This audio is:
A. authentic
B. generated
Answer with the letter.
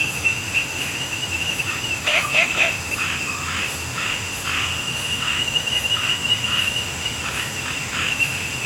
B